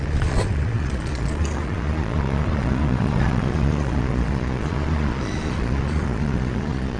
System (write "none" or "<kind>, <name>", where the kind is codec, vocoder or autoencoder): vocoder, Vocos